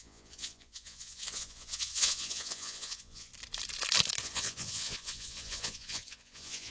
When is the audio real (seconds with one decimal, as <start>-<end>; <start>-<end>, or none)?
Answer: 3.3-4.2